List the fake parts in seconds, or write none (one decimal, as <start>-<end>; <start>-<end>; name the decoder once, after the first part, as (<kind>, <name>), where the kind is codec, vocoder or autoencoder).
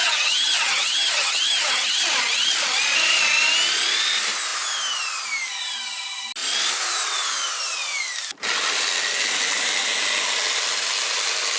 0.0-2.0 (vocoder, HiFi-GAN)